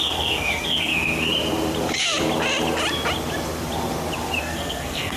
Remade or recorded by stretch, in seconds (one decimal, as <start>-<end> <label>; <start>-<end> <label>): 0.0-1.3 remade; 1.3-4.4 recorded; 4.4-5.2 remade